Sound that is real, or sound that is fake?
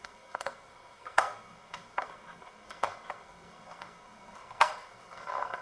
fake